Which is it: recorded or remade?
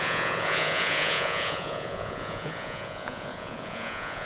remade